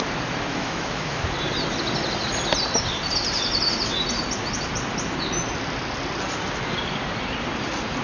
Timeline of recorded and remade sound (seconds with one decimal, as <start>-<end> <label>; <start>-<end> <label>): 0.0-0.5 recorded; 0.5-1.2 remade; 1.2-8.0 recorded